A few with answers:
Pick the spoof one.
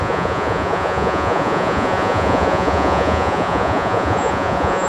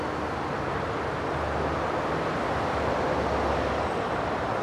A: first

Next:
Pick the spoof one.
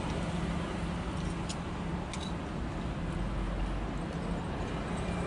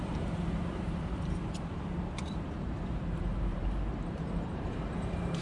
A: second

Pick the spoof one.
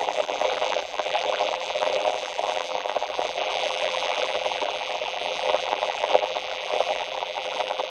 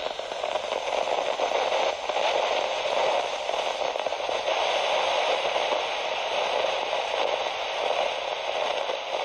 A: first